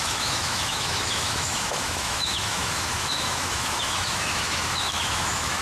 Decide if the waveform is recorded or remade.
remade